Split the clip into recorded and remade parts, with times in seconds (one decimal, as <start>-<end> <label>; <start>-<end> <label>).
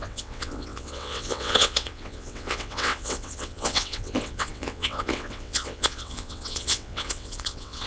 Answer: 0.0-7.9 remade